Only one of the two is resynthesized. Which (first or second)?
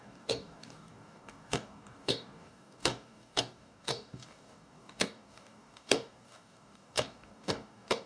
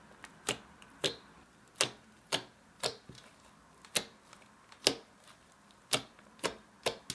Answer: first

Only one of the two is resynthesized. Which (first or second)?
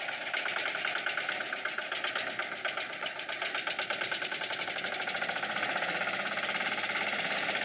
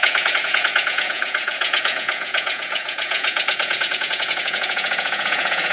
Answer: second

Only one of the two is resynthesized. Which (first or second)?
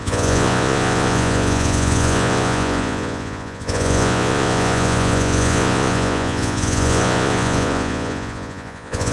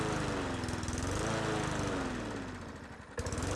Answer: first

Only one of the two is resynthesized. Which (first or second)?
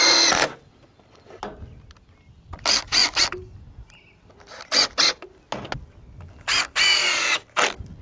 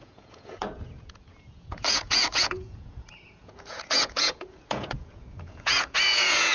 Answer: second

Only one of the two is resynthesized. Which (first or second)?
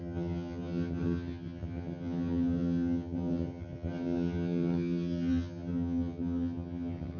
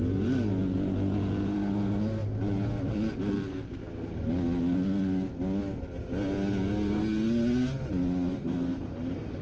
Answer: first